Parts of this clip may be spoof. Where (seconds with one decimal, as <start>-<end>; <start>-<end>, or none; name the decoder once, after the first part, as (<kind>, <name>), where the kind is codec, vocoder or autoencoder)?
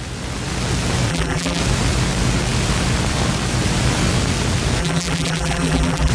1.1-1.6 (vocoder, BigVGAN v2); 4.8-6.1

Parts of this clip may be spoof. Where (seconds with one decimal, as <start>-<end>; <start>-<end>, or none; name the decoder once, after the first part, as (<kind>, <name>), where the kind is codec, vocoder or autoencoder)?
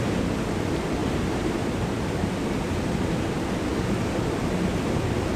1.0-3.1 (vocoder, BigVGAN v2)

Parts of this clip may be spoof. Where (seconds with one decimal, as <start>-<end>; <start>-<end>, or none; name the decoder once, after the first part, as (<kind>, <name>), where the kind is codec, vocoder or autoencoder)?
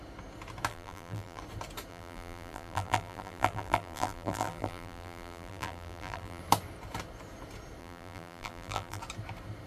0.7-1.4 (vocoder, BigVGAN v2); 1.9-6.4; 7.8-9.0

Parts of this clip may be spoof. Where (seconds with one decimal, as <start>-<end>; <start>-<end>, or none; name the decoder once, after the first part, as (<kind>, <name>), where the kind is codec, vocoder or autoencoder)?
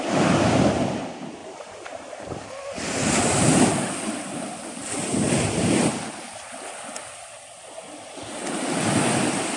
1.4-2.4 (vocoder, BigVGAN v2)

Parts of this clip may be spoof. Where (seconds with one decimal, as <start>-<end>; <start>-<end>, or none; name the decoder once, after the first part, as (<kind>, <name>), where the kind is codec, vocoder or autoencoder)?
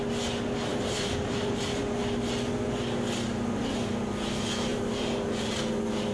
0.7-1.7 (vocoder, BigVGAN v2); 4.7-5.6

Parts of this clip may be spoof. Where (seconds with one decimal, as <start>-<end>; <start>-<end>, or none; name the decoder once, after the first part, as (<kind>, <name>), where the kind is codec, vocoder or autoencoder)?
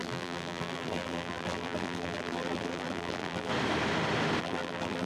0.0-3.5 (vocoder, BigVGAN v2); 4.4-5.1